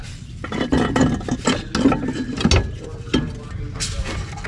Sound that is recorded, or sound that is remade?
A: recorded